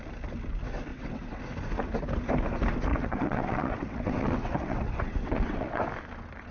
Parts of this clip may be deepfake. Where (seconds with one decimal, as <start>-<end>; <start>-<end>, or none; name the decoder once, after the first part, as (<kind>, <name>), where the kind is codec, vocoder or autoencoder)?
0.9-1.4 (vocoder, WaveNeXt); 2.9-5.8